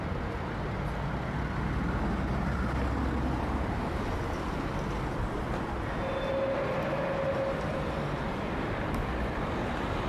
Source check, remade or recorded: recorded